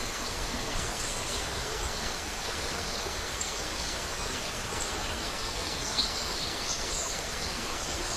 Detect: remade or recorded remade